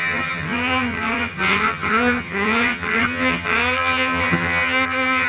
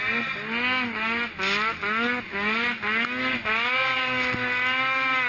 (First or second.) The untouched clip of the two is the second